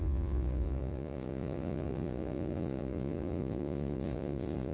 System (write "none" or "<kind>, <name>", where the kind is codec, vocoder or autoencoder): vocoder, Vocos